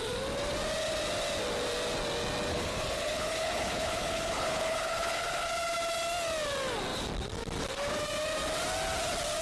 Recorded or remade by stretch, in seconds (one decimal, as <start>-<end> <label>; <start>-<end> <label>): 0.0-2.5 recorded; 2.5-5.5 remade; 5.5-9.4 recorded